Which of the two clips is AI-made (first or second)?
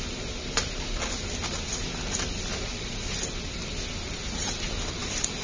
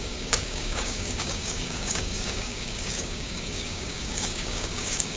second